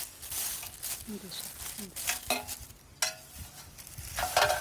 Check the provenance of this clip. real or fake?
real